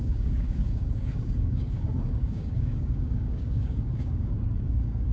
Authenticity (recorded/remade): remade